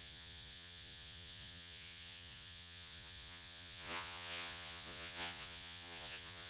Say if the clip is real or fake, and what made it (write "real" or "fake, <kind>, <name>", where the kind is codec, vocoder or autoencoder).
fake, vocoder, Vocos